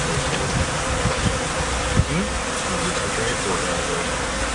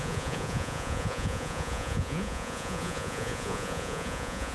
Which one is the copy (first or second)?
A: second